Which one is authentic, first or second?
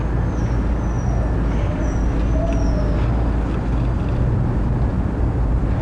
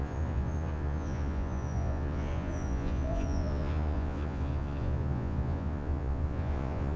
first